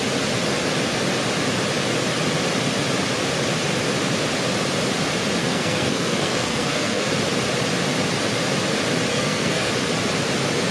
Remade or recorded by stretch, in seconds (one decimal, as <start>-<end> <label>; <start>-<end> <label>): 0.0-5.4 recorded; 5.4-7.1 remade; 7.1-9.1 recorded; 9.1-9.7 remade; 9.7-10.7 recorded